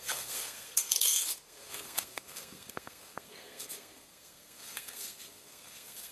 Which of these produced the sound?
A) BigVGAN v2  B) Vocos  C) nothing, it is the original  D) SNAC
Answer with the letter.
D